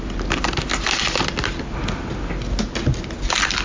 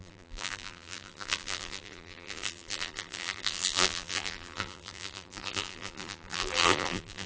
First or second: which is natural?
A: first